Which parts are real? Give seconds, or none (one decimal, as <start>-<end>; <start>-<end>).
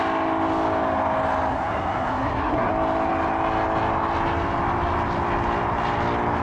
0.0-1.5; 2.7-6.4